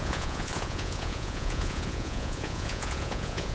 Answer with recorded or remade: remade